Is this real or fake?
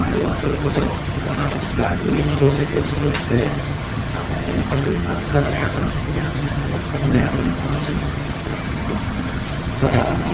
fake